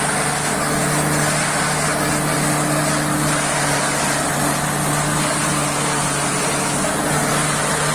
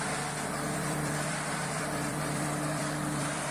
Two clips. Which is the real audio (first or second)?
first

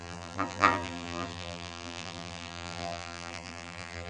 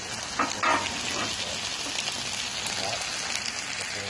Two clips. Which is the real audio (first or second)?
second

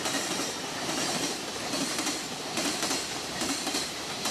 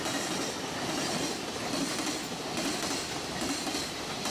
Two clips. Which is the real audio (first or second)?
second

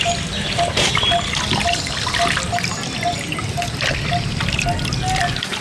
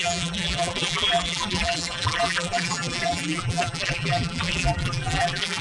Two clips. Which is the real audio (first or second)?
first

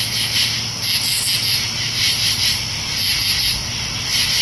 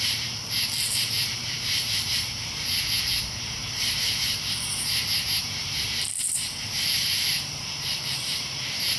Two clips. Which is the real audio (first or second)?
first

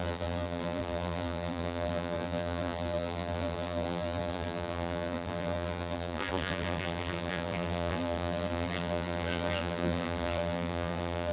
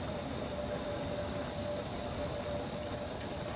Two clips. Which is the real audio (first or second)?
second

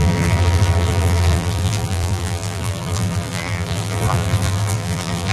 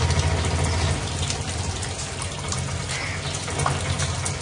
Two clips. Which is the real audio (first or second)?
second